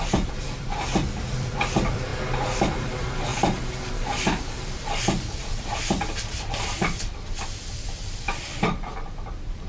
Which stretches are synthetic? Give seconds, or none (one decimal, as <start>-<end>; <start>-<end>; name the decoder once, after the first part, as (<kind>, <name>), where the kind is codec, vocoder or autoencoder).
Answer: 0.0-2.1 (vocoder, BigVGAN v2); 2.7-9.7